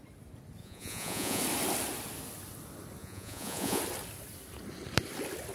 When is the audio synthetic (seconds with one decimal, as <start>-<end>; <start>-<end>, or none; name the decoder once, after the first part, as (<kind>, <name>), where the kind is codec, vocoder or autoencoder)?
0.6-1.4 (vocoder, Vocos); 3.0-3.8